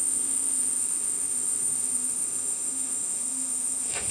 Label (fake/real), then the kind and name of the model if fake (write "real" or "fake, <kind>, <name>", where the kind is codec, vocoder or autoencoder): fake, autoencoder, DAC-VAE